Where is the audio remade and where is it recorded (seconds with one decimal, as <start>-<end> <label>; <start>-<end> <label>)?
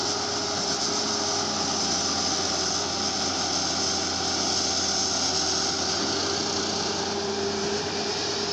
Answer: 0.0-6.2 recorded; 6.2-6.9 remade; 6.9-8.5 recorded